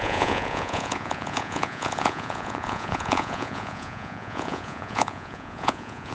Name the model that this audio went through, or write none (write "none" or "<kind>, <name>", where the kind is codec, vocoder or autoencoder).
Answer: vocoder, Vocos